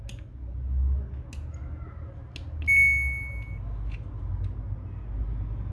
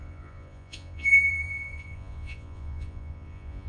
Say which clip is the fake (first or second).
second